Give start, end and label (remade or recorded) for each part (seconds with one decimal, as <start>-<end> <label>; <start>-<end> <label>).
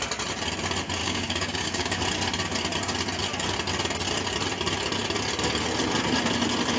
0.0-1.0 recorded; 1.0-2.0 remade; 2.0-6.8 recorded